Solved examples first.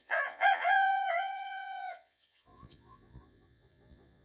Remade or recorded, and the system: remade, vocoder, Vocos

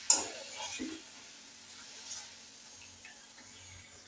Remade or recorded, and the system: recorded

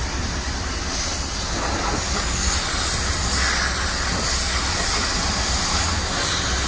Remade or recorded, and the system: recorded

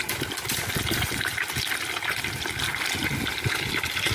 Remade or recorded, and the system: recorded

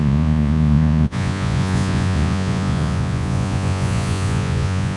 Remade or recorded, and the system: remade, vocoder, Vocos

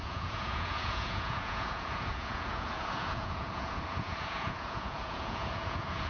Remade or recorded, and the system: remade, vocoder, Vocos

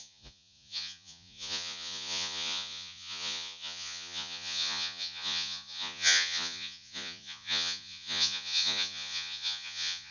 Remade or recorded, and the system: remade, vocoder, Vocos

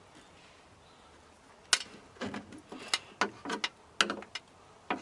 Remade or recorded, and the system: recorded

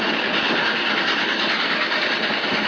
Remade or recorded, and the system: recorded